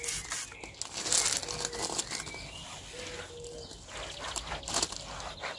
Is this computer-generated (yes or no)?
no